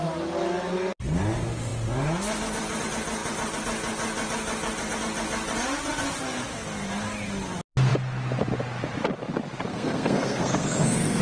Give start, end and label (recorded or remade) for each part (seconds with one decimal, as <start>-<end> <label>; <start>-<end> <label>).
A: 0.0-9.7 recorded; 9.7-11.2 remade